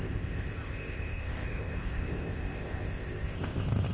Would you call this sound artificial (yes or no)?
yes